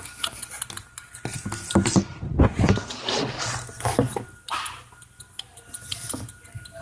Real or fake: real